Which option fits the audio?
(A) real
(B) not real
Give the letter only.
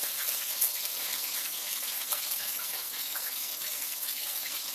B